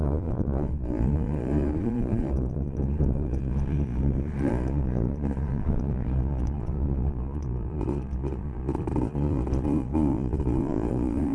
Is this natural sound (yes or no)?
no